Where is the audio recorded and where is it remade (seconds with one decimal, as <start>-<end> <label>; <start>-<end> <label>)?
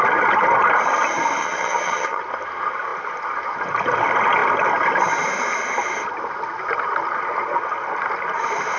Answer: 0.0-1.4 recorded; 1.4-2.2 remade; 2.2-8.8 recorded